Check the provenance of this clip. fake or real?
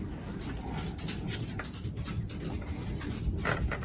real